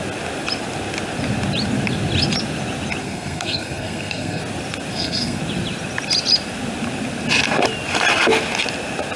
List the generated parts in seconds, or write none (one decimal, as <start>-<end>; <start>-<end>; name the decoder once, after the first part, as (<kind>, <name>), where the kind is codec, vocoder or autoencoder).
3.0-4.4 (codec, SNAC); 4.9-5.4